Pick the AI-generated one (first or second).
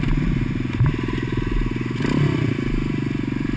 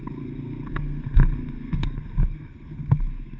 second